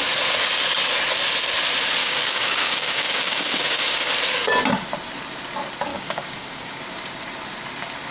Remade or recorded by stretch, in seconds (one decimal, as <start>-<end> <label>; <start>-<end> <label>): 0.0-2.0 recorded; 2.0-4.1 remade; 4.1-5.9 recorded; 5.9-6.8 remade; 6.8-8.1 recorded